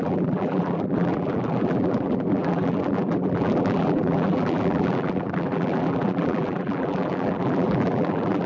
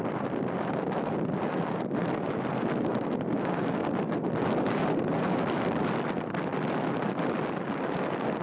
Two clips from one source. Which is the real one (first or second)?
second